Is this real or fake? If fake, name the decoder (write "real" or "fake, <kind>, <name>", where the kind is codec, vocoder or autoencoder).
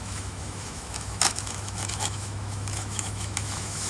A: fake, autoencoder, DAC-VAE